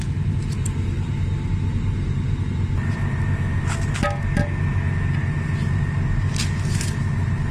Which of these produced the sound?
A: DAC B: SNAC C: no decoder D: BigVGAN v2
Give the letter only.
C